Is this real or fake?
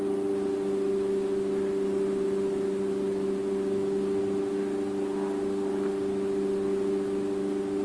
real